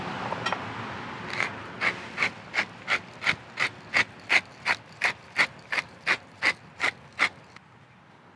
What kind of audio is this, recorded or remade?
recorded